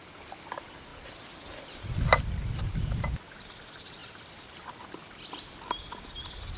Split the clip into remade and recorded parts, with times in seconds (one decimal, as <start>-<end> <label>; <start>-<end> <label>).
0.0-0.5 remade; 0.5-6.6 recorded